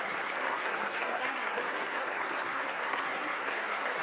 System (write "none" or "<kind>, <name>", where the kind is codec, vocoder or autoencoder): codec, SNAC